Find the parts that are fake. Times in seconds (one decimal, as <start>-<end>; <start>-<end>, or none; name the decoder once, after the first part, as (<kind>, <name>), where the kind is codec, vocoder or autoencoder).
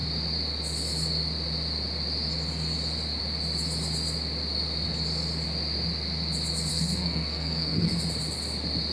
6.7-7.9 (codec, SNAC)